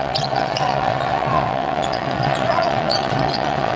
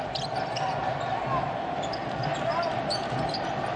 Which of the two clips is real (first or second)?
second